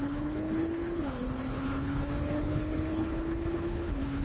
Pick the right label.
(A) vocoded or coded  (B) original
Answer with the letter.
A